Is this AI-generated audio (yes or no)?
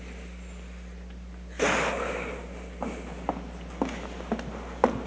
no